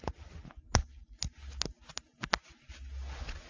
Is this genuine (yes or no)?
yes